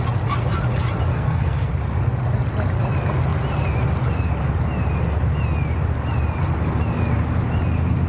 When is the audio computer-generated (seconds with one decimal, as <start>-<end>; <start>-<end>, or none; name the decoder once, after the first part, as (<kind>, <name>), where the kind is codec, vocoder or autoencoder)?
1.1-1.7 (codec, SNAC)